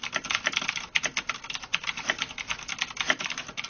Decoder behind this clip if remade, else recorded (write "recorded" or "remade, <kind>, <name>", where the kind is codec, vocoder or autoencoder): recorded